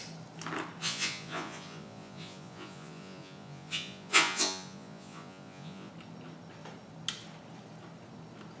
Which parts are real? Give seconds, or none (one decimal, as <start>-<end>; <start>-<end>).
0.0-0.8; 5.9-8.6